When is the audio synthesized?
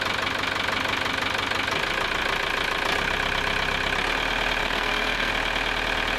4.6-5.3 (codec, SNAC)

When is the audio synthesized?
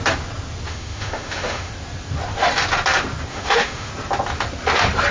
0.7-1.7 (autoencoder, DAC-VAE); 3.3-3.9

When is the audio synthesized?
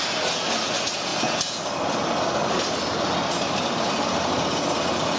none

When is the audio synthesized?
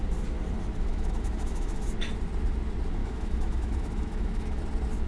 0.9-1.9 (autoencoder, DAC-VAE); 3.0-4.6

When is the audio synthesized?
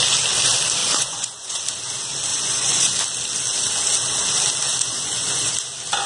0.8-1.6 (vocoder, Vocos); 2.3-3.0; 4.8-5.5